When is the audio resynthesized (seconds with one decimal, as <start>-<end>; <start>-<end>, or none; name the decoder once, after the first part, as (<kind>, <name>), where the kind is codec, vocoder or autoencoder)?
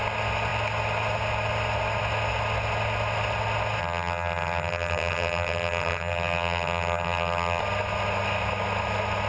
3.8-7.6 (vocoder, HiFi-GAN)